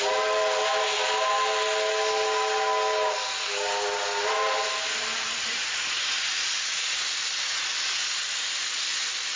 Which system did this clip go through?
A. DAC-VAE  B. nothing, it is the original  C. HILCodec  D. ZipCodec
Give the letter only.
B